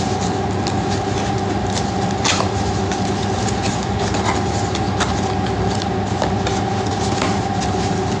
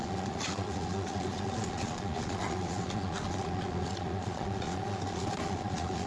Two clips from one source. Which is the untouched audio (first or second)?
first